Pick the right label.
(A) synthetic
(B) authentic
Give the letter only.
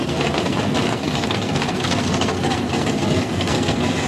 A